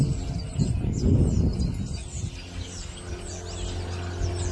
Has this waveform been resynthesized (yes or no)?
no